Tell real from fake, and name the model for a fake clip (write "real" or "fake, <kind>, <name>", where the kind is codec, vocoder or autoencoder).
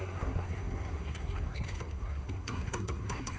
fake, codec, SNAC